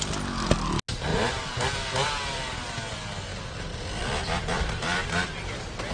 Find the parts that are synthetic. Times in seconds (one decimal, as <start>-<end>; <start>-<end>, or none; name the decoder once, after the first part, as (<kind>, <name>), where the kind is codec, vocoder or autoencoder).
1.1-1.7 (vocoder, BigVGAN v2)